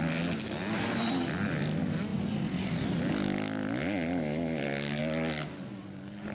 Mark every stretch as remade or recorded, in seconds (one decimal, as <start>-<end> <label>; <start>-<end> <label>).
0.0-6.3 recorded